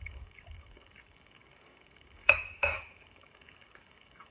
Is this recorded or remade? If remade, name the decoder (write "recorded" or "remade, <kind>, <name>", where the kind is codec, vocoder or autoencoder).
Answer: remade, codec, DAC